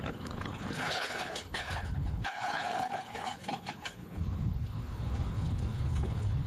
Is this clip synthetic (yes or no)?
yes